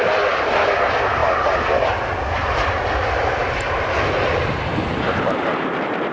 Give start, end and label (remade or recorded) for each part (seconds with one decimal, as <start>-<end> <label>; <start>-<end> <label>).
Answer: 0.0-6.1 recorded